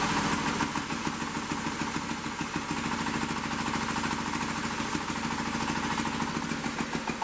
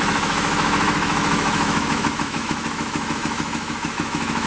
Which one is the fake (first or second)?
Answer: second